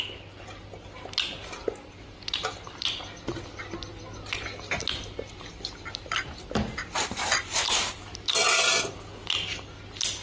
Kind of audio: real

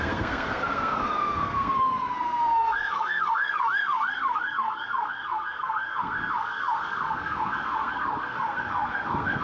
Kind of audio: fake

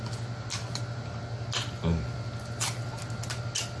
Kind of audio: real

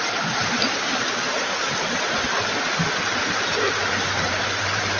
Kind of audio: fake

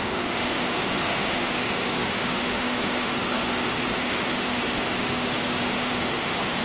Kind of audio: fake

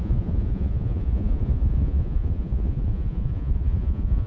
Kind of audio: fake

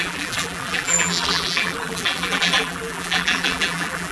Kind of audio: fake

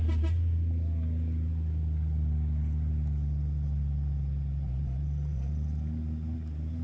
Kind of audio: real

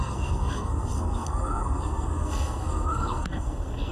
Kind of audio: fake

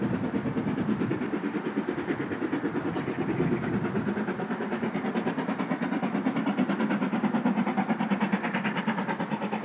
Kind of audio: real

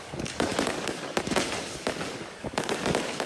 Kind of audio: fake